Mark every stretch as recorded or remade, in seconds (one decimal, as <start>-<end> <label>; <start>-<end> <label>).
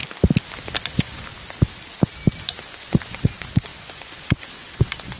0.0-0.8 recorded; 0.8-1.3 remade; 1.3-2.4 recorded; 2.4-5.2 remade